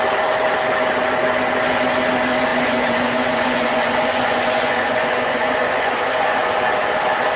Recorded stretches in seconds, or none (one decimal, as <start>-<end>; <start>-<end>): 0.0-2.5; 6.5-7.4